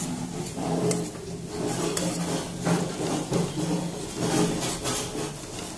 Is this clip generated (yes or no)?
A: no